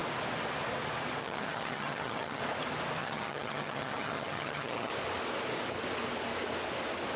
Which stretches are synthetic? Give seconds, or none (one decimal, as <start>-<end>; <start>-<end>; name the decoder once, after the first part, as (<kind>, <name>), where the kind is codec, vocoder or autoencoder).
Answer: 1.2-2.4 (vocoder, HiFi-GAN); 3.0-4.9